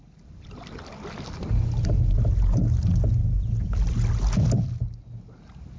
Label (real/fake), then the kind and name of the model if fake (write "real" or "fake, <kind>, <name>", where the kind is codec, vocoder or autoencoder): real